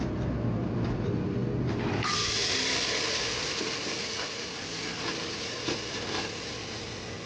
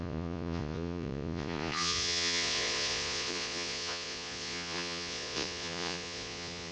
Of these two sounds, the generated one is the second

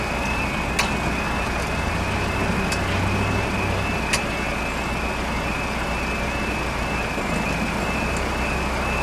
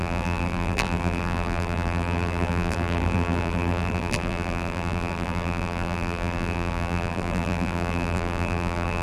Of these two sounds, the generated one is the second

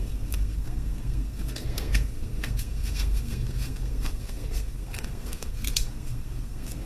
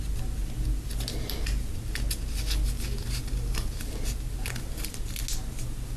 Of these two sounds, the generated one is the first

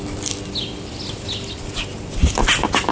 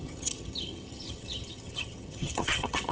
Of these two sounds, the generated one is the second